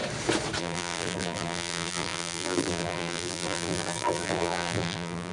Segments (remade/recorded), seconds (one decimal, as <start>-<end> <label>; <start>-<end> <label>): 0.0-0.6 recorded; 0.6-5.3 remade